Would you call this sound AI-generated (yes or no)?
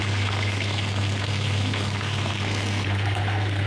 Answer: yes